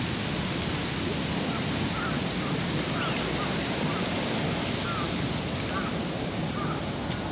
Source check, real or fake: real